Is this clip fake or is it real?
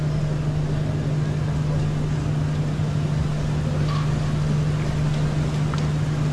real